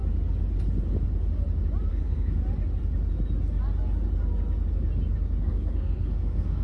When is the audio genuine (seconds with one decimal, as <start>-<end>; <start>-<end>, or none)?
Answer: 0.0-1.9; 2.4-5.4